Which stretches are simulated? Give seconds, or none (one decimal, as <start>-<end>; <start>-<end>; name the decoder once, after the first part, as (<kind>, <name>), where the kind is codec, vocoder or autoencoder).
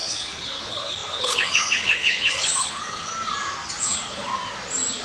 0.0-3.1 (codec, HILCodec); 3.8-4.3